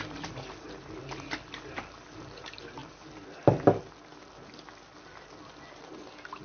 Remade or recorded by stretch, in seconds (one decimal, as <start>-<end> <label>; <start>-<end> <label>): 0.0-6.4 recorded